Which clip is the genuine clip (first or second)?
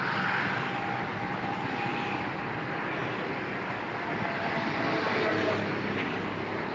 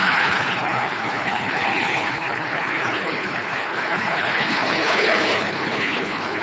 first